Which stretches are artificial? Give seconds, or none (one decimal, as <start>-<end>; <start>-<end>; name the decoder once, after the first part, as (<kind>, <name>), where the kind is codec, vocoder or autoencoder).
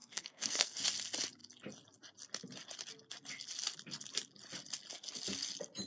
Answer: 0.0-0.8 (codec, SNAC)